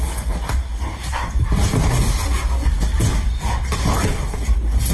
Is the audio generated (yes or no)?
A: no